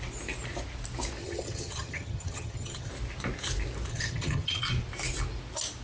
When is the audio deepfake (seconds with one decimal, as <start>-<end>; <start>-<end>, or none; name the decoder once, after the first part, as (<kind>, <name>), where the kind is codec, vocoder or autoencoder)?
1.2-2.9 (vocoder, HiFi-GAN); 3.9-4.6